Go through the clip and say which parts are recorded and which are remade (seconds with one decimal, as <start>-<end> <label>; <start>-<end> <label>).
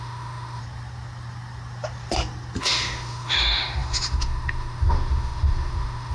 0.0-0.6 remade; 0.6-2.6 recorded; 2.6-6.1 remade